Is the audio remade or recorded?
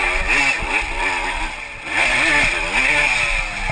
recorded